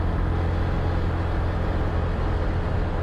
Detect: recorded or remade recorded